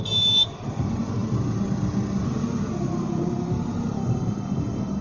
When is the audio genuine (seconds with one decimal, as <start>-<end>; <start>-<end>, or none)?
0.0-4.0

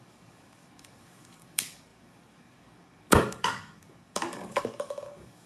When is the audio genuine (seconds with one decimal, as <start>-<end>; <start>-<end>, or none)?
none

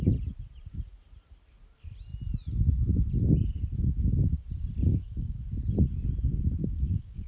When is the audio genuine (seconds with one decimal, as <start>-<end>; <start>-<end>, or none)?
0.0-4.9; 5.4-6.6

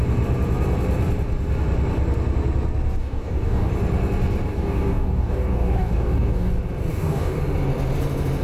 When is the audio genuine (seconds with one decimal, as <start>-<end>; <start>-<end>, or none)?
0.0-3.0; 3.7-4.5; 6.5-6.9; 7.4-8.4